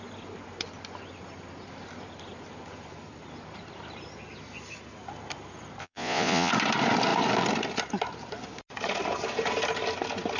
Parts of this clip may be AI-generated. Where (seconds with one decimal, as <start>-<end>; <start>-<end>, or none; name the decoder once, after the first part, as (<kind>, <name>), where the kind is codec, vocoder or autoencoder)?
5.8-6.5 (vocoder, Vocos)